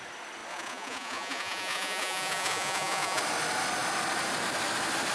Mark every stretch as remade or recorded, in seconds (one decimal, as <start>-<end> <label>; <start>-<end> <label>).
0.0-0.5 recorded; 0.5-3.2 remade; 3.2-5.1 recorded